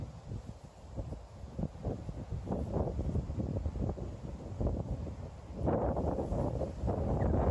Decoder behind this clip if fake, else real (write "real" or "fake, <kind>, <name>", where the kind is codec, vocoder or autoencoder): real